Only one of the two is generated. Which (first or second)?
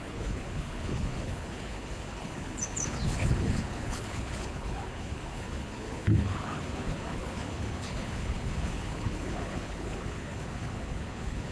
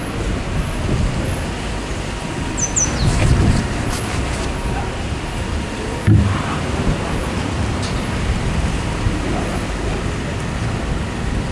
first